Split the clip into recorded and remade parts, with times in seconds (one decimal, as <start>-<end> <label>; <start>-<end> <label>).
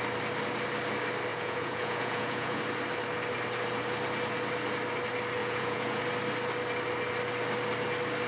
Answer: 0.0-1.3 recorded; 1.3-2.6 remade; 2.6-5.4 recorded; 5.4-6.0 remade; 6.0-8.3 recorded